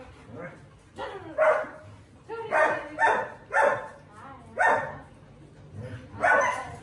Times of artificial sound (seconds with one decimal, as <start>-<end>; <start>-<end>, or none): none